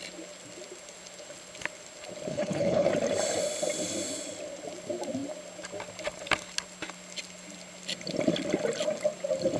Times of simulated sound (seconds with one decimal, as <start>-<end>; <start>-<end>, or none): 2.3-2.9